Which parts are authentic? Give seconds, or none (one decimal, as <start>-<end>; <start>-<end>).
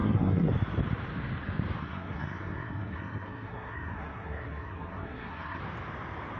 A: 0.5-1.8; 5.6-6.4